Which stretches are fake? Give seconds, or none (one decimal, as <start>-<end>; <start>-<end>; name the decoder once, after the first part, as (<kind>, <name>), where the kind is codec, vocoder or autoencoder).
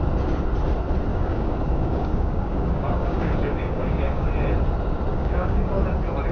1.1-4.3 (codec, DAC); 5.1-5.7